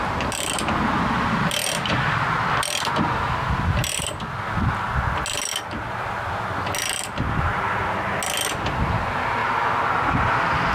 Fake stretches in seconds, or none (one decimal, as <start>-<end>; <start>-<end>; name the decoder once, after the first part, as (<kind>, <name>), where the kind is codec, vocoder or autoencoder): 1.6-4.2 (vocoder, BigVGAN v2)